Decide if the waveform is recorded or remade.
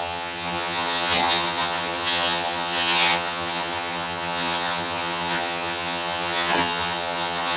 remade